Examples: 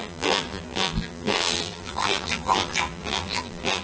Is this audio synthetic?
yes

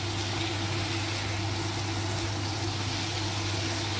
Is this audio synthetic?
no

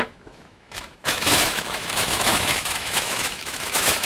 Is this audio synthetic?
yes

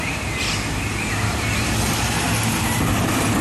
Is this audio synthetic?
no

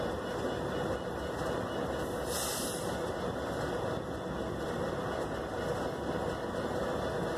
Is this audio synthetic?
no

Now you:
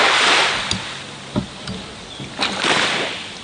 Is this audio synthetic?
no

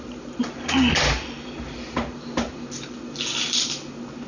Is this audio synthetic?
no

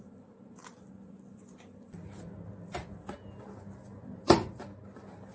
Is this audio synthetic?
no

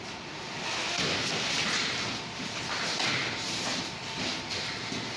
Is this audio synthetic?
no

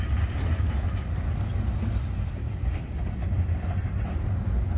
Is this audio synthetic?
no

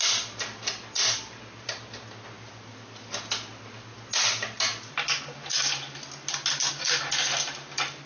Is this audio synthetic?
no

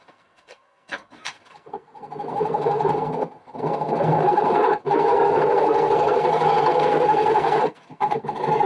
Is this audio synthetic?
yes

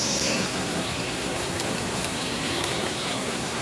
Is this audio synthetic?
yes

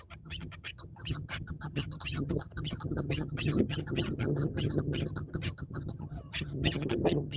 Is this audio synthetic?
yes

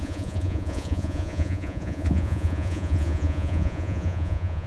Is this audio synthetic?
yes